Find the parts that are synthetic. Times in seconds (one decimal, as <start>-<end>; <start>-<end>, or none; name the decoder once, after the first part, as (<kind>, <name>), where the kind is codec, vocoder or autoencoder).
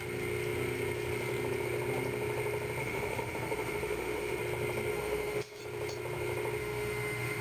2.8-4.4 (autoencoder, DAC-VAE); 4.9-5.6; 6.6-7.4